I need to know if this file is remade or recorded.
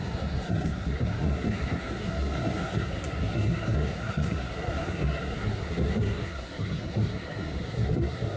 remade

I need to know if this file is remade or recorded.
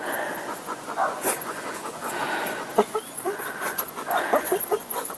remade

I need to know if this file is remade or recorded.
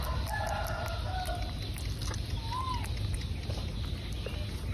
recorded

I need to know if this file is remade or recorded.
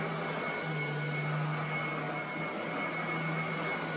recorded